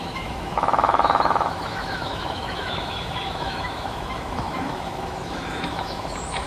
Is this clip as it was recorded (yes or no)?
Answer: no